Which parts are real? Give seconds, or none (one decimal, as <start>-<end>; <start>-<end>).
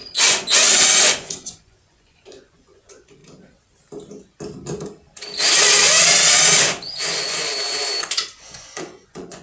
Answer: 3.2-6.6; 7.5-8.0